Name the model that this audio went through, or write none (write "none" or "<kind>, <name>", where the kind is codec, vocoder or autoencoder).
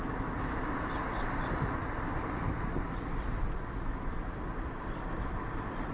vocoder, BigVGAN v2